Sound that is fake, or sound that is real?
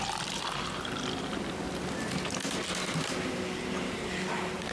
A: fake